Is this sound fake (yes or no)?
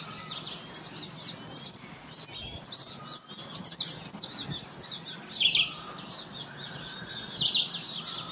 no